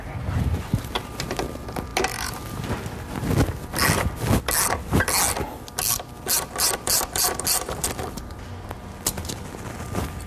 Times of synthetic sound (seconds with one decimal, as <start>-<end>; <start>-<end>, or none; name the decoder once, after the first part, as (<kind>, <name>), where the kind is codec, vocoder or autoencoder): none